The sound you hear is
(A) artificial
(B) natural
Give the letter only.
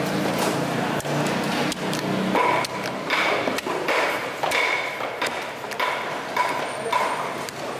B